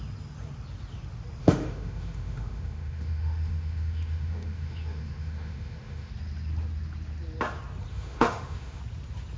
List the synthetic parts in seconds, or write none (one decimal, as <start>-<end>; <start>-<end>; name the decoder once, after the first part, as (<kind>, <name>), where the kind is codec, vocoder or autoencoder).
1.4-6.1 (autoencoder, DAC-VAE); 7.9-8.8